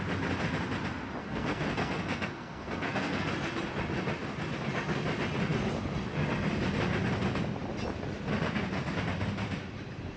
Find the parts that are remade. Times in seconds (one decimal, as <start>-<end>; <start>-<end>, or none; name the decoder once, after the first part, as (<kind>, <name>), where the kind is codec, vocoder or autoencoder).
1.2-3.3 (codec, SNAC)